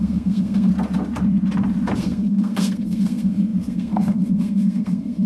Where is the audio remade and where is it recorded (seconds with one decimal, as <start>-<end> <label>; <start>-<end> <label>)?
0.0-0.7 remade; 0.7-2.0 recorded; 2.0-5.3 remade